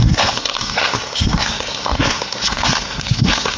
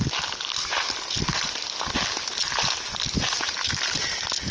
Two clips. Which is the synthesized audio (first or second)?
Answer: first